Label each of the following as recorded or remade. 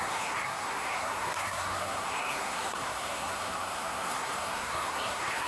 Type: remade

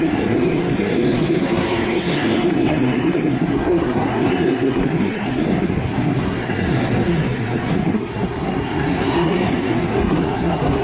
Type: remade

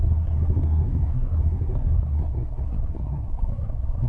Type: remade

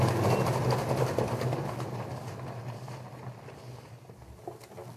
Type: recorded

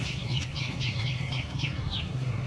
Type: remade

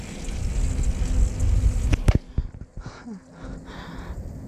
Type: recorded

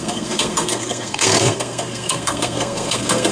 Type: remade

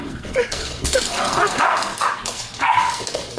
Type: remade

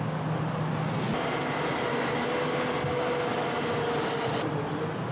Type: recorded